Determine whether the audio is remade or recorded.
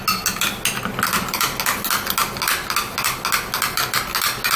recorded